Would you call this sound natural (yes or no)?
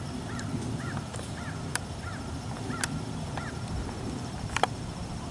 yes